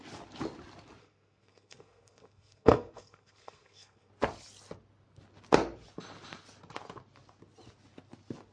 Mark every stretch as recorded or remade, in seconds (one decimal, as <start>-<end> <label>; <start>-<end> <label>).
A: 0.0-1.0 recorded; 1.0-4.1 remade; 4.1-8.5 recorded